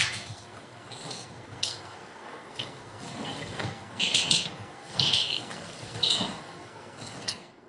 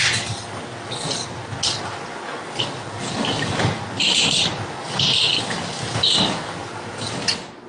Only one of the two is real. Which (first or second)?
second